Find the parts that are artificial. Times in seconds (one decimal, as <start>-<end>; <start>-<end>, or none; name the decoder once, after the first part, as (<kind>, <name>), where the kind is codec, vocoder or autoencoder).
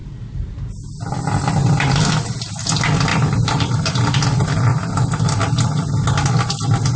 0.0-0.5 (vocoder, BigVGAN v2); 1.6-2.2; 3.1-3.9